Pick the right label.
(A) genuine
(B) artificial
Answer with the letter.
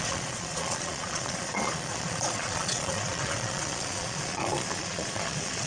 B